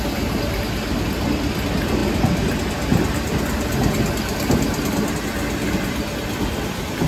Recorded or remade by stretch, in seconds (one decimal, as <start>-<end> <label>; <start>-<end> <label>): 0.0-7.1 recorded